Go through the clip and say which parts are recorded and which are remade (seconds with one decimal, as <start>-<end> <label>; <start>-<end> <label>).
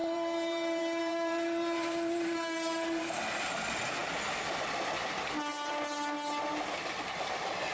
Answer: 0.0-3.2 remade; 3.2-7.7 recorded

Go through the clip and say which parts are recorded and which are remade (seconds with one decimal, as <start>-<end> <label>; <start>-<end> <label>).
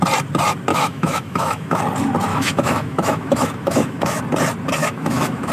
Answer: 0.0-0.7 recorded; 0.7-1.8 remade; 1.8-2.3 recorded; 2.3-4.2 remade; 4.2-4.8 recorded; 4.8-5.5 remade